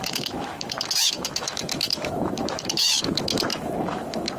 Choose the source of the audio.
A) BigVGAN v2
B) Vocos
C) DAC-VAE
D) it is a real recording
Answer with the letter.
C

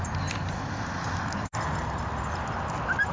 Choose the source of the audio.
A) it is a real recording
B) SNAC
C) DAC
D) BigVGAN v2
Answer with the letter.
A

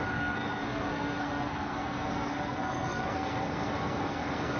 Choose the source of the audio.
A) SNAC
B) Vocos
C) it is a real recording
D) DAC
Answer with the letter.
A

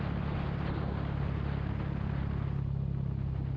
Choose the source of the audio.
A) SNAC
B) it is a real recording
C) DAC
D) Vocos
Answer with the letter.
B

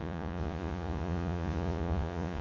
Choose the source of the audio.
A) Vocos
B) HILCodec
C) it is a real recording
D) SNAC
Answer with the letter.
A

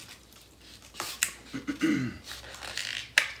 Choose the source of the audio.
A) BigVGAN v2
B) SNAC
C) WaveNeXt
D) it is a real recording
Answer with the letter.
D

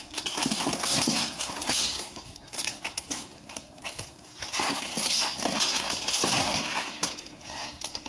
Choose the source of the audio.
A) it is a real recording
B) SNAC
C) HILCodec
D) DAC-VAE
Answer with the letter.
B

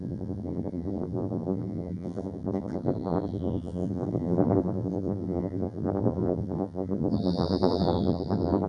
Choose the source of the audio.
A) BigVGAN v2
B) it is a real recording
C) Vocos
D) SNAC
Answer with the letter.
A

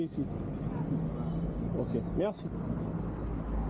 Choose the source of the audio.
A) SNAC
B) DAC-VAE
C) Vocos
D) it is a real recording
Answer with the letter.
D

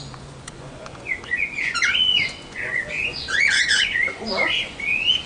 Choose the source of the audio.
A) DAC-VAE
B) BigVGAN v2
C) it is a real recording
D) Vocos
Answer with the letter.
D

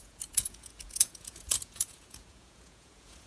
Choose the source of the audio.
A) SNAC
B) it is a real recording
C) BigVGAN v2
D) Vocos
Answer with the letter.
D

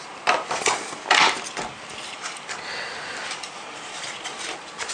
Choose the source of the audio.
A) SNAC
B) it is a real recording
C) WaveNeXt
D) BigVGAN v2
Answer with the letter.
B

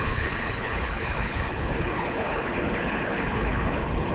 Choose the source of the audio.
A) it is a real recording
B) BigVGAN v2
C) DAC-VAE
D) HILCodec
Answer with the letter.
D